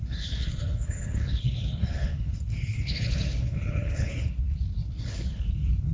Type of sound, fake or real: fake